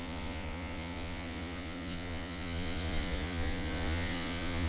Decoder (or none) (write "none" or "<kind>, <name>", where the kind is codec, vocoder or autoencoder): vocoder, Vocos